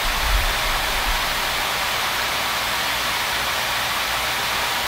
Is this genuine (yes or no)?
yes